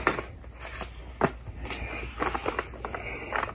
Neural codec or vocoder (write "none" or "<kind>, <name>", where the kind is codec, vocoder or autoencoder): none